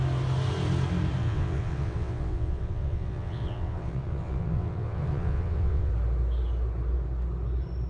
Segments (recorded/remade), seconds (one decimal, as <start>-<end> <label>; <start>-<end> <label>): 0.0-1.2 recorded; 1.2-5.9 remade; 5.9-7.9 recorded